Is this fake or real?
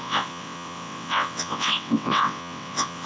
fake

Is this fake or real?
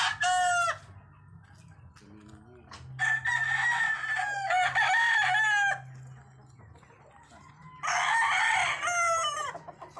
real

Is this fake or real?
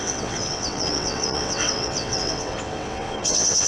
fake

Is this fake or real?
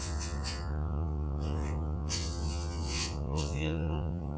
fake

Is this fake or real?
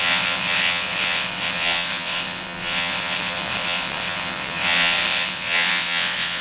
fake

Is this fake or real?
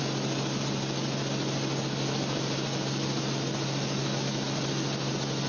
real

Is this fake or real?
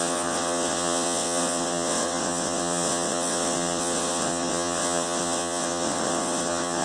fake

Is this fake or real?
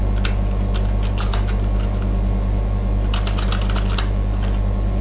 real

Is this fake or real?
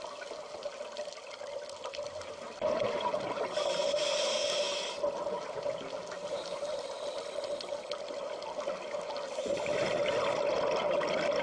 real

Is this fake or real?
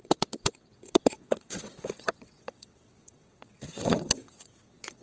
fake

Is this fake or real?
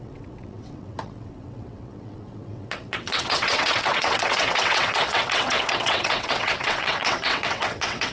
fake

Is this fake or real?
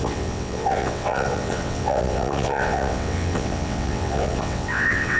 fake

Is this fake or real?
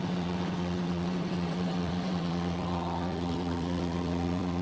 fake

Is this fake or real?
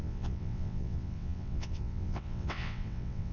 fake